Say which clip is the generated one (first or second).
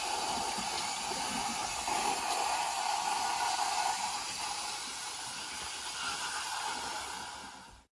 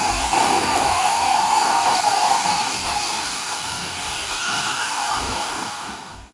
second